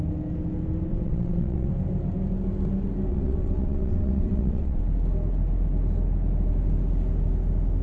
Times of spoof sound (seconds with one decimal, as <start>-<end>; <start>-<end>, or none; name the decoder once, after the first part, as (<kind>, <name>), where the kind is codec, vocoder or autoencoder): 0.9-1.7 (vocoder, WaveNeXt); 3.1-4.8